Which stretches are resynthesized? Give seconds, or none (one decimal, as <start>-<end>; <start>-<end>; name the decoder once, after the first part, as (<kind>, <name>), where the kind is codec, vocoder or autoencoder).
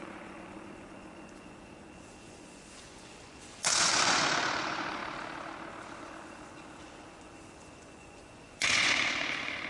0.0-5.0 (vocoder, Vocos); 6.0-9.7